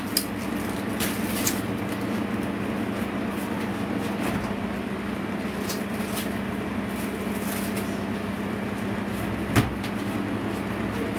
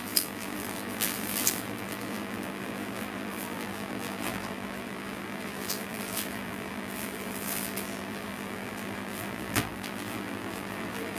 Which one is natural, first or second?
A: first